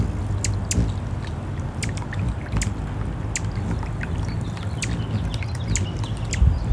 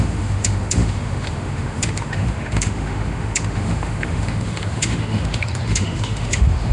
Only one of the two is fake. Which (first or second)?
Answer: second